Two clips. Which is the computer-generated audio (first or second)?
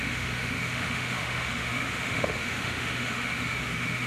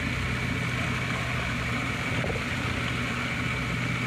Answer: first